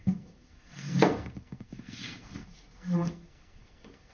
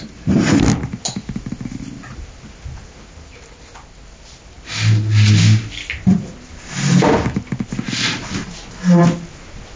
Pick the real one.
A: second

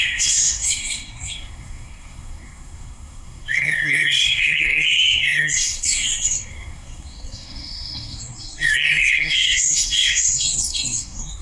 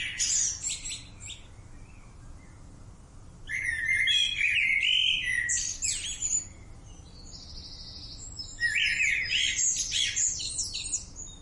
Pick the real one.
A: second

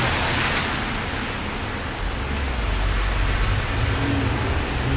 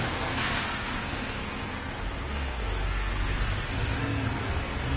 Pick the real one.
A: first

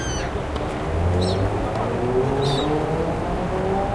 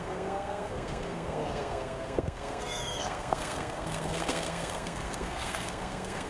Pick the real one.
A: first